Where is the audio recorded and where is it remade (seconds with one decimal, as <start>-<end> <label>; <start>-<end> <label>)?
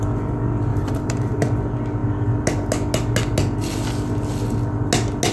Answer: 0.0-0.7 recorded; 0.7-1.4 remade; 1.4-5.3 recorded